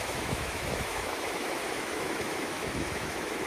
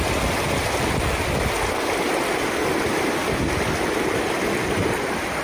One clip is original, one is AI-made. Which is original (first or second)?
second